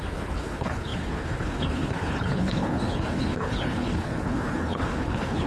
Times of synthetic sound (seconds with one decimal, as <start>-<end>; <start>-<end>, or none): 0.0-5.5